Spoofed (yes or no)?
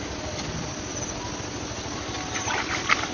no